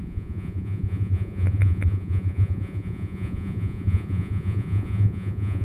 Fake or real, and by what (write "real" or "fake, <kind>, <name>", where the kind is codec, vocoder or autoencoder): fake, vocoder, Vocos